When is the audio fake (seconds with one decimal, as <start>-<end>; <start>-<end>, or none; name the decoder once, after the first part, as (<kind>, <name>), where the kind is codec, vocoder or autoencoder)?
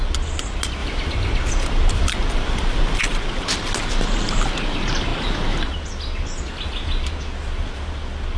0.8-3.0 (vocoder, BigVGAN v2)